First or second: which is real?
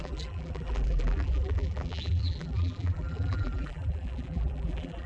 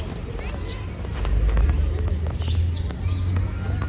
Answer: second